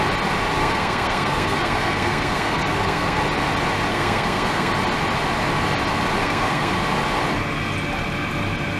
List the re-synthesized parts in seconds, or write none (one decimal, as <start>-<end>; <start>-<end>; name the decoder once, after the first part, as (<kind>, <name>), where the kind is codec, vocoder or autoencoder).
0.6-3.2 (codec, SNAC); 3.9-4.7; 6.2-6.7